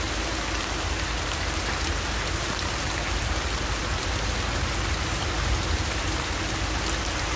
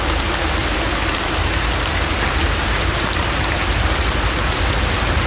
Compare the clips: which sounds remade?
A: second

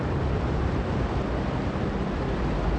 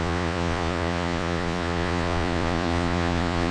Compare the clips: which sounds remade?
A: second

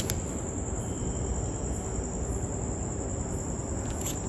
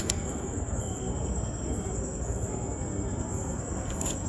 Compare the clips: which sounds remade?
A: second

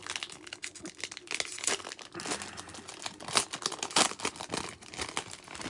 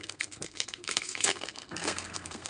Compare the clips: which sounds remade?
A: second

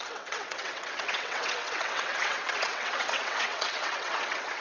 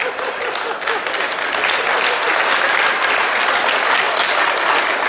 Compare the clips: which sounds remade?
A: first